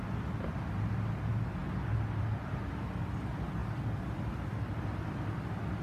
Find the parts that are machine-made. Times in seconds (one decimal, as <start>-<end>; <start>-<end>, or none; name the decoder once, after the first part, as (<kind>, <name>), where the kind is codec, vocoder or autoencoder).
none